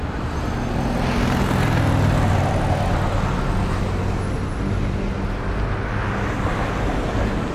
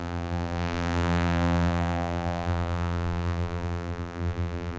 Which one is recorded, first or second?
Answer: first